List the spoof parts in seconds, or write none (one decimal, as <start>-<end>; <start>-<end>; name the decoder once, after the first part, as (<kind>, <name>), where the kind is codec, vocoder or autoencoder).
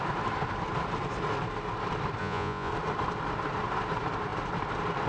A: 2.2-2.7 (vocoder, Vocos)